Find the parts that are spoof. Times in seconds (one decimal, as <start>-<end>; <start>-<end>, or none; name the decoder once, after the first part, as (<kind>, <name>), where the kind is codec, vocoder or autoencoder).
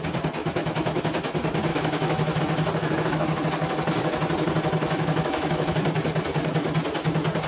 0.4-1.0 (autoencoder, DAC-VAE); 1.7-2.4; 2.8-3.4; 4.8-5.7